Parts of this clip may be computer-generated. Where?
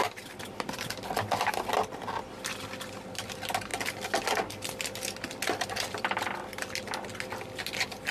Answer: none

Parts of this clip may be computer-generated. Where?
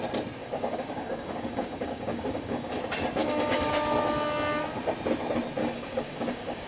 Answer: 0.4-2.8 (codec, DAC); 3.2-3.7; 5.6-6.7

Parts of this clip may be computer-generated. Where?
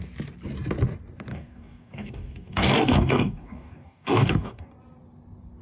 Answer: 1.3-4.7 (codec, DAC)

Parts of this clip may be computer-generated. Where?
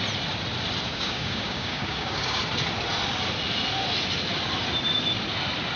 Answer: 0.9-2.4 (codec, DAC)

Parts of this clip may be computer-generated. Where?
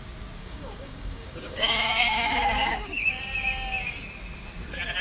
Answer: 0.4-3.2 (codec, DAC)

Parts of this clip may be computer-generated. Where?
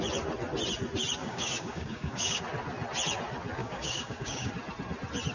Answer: 1.2-2.4 (codec, DAC); 3.6-4.5